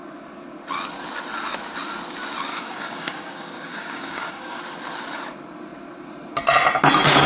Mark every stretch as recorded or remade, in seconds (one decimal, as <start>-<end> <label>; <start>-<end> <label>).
0.0-2.5 recorded; 2.5-4.6 remade; 4.6-7.3 recorded